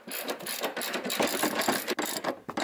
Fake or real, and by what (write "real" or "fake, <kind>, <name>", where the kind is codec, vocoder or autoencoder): real